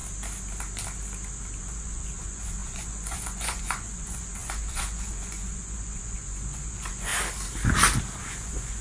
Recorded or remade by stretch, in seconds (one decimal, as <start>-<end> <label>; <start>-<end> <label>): 0.0-1.6 recorded; 1.6-7.1 remade; 7.1-8.2 recorded; 8.2-8.8 remade